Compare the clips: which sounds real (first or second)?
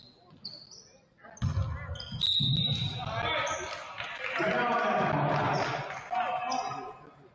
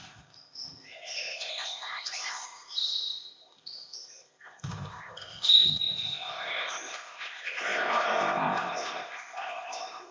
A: first